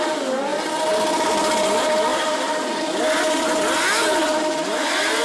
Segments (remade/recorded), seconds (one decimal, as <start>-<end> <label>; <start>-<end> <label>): 0.0-0.5 recorded; 0.5-1.3 remade; 1.3-2.1 recorded; 2.1-4.4 remade; 4.4-5.2 recorded